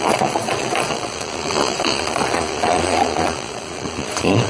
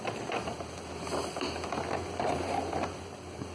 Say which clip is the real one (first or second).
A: second